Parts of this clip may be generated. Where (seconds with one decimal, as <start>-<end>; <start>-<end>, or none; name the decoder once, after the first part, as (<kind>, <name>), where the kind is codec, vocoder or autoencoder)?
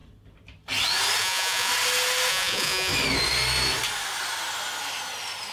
1.2-1.7 (vocoder, Vocos); 2.3-2.9